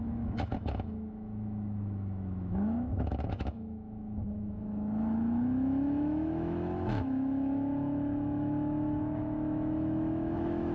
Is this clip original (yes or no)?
no